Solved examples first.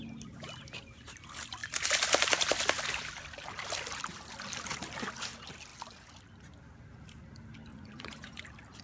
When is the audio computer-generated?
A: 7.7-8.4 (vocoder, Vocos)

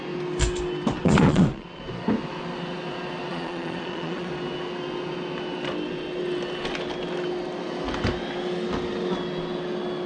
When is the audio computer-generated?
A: 1.0-1.8 (vocoder, Vocos); 3.3-4.3

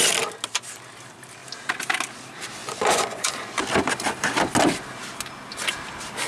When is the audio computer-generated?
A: 2.6-3.6 (vocoder, Vocos)